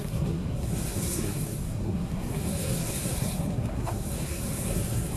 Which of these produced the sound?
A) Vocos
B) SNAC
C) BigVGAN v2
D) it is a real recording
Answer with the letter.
B